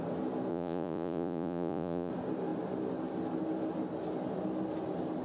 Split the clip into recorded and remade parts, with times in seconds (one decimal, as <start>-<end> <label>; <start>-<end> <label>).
0.0-0.5 recorded; 0.5-2.1 remade; 2.1-5.2 recorded